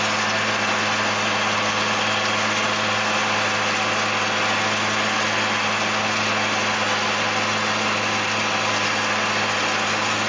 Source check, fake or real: real